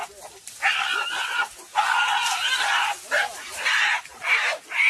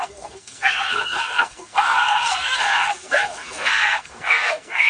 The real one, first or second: first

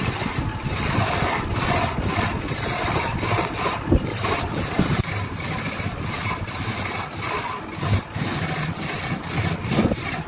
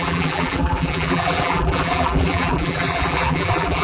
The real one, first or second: first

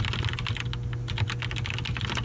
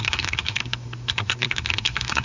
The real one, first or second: first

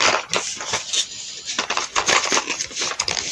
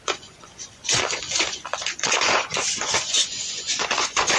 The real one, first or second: first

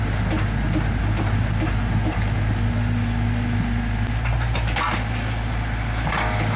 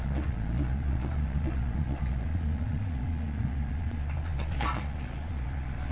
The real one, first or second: first